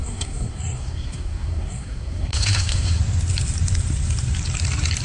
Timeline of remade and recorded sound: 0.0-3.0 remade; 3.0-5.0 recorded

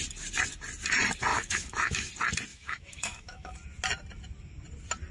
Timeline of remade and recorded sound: 0.0-1.3 recorded; 1.3-2.1 remade; 2.1-2.5 recorded; 2.5-3.5 remade; 3.5-5.1 recorded

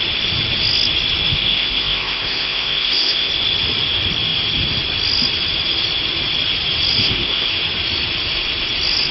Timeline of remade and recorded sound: 0.0-1.3 recorded; 1.3-3.3 remade; 3.3-7.0 recorded; 7.0-7.5 remade; 7.5-9.1 recorded

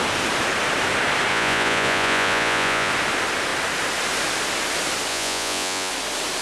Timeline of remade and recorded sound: 0.0-1.3 recorded; 1.3-2.9 remade; 2.9-5.1 recorded; 5.1-5.9 remade; 5.9-6.4 recorded

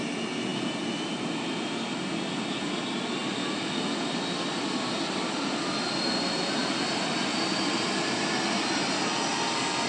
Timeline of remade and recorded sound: 0.0-3.2 recorded; 3.2-7.9 remade; 7.9-9.9 recorded

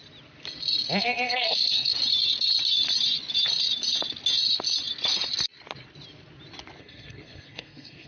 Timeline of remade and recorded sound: 0.0-1.0 recorded; 1.0-1.9 remade; 1.9-6.8 recorded; 6.8-8.1 remade